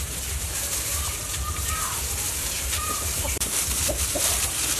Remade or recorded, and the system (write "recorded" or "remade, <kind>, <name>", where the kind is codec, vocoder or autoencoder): remade, vocoder, BigVGAN v2